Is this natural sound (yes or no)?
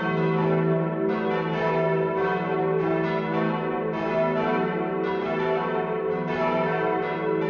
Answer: yes